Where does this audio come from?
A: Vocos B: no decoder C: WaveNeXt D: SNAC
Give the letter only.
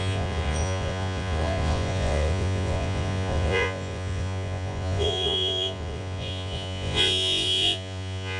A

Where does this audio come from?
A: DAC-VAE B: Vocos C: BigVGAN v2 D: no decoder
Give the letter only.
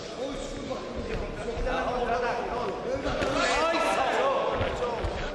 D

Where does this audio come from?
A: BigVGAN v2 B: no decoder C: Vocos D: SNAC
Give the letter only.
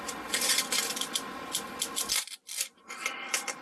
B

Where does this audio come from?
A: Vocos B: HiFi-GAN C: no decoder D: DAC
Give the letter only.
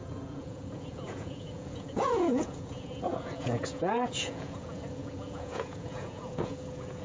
A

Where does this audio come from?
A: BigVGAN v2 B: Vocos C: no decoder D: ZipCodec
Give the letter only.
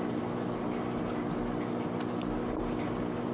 C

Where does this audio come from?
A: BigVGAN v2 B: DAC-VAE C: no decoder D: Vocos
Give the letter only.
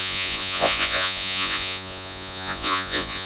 D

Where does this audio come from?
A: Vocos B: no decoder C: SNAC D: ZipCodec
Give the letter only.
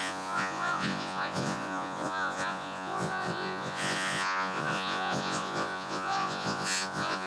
A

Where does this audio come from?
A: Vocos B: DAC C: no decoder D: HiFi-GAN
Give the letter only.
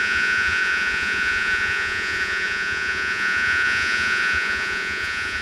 A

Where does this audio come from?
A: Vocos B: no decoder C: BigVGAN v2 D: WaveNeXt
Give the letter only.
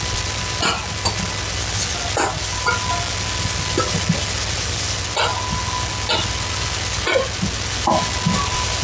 B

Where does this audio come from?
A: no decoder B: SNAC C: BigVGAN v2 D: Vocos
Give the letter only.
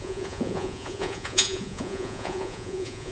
D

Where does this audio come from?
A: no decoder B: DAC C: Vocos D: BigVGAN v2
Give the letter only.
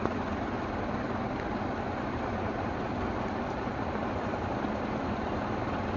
A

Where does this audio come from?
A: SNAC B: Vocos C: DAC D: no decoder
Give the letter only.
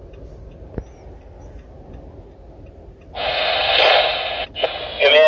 D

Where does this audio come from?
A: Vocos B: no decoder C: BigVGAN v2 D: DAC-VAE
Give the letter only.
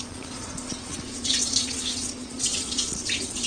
A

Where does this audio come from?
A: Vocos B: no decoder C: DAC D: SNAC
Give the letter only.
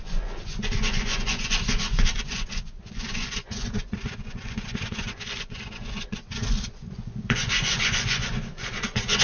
A